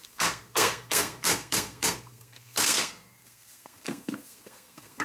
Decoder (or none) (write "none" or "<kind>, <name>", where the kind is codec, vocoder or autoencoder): codec, SNAC